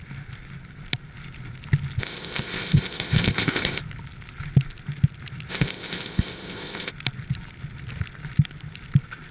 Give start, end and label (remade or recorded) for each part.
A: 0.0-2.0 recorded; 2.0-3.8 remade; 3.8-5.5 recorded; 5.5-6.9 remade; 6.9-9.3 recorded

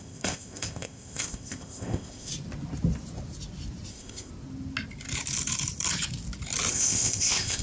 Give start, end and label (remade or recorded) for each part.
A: 0.0-2.3 remade; 2.3-3.9 recorded; 3.9-4.3 remade; 4.3-6.7 recorded; 6.7-7.6 remade

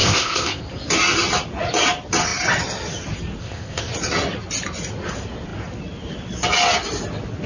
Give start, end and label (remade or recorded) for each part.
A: 0.0-0.6 remade; 0.6-3.4 recorded; 3.4-3.9 remade; 3.9-7.5 recorded

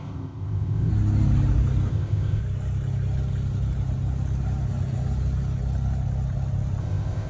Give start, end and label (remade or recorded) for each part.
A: 0.0-0.9 remade; 0.9-1.9 recorded; 1.9-2.4 remade; 2.4-6.8 recorded; 6.8-7.3 remade

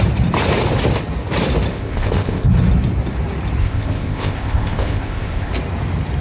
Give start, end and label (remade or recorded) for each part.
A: 0.0-1.7 recorded; 1.7-2.5 remade; 2.5-3.6 recorded; 3.6-5.5 remade; 5.5-6.2 recorded